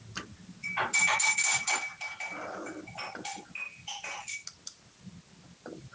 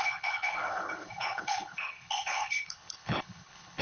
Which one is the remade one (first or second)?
second